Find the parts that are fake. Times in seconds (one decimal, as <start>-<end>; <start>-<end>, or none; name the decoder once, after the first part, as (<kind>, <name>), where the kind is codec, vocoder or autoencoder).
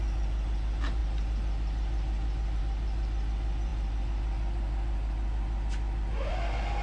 none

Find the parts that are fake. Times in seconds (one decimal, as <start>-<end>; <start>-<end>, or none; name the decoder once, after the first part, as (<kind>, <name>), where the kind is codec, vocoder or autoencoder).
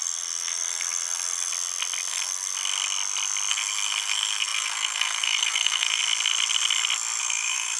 0.0-1.5 (codec, SNAC); 2.1-2.5; 3.5-6.0; 7.2-7.8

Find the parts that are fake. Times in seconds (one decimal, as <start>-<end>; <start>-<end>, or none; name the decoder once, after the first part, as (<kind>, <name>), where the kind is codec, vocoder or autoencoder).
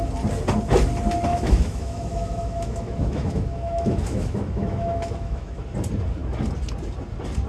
1.3-5.6 (autoencoder, DAC-VAE)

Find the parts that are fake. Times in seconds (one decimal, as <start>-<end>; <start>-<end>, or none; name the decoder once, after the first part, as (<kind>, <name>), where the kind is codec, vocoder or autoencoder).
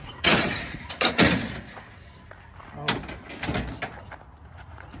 0.0-1.4 (vocoder, Vocos); 4.4-5.0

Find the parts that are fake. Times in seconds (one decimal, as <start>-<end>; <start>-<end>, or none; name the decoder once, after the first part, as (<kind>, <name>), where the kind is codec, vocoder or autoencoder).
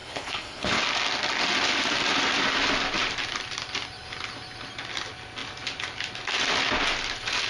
0.0-0.8 (codec, HILCodec)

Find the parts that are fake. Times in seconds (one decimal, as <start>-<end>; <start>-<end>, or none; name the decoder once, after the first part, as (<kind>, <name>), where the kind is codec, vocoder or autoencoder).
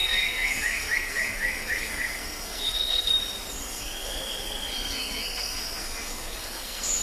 0.0-3.1 (codec, SNAC); 3.6-7.0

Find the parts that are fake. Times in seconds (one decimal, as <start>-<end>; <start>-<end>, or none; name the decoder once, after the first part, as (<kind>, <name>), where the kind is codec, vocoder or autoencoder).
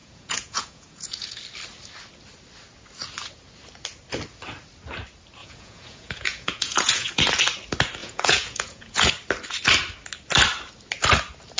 0.0-1.4 (vocoder, Vocos); 5.4-7.2; 8.0-9.1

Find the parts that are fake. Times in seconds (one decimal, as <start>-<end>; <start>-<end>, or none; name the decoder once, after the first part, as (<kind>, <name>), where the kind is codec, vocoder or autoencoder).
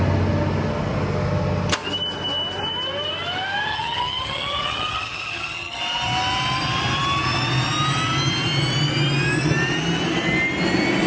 3.7-5.8 (vocoder, HiFi-GAN)